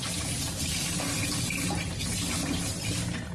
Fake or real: real